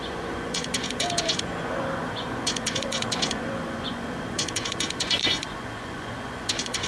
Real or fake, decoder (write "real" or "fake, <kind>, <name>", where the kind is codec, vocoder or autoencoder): fake, vocoder, Vocos